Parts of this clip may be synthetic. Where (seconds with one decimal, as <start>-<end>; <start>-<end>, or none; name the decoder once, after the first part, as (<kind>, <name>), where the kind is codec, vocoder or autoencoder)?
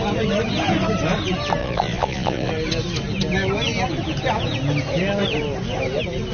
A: 1.6-2.5 (vocoder, Vocos)